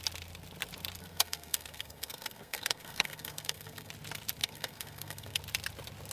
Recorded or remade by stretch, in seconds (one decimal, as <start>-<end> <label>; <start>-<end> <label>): 0.0-1.0 recorded; 1.0-3.9 remade; 3.9-4.4 recorded; 4.4-5.4 remade; 5.4-6.1 recorded